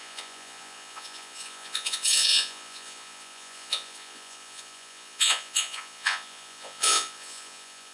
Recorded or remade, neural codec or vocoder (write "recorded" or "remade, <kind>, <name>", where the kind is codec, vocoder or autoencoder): remade, vocoder, Vocos